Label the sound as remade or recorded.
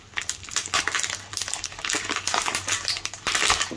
recorded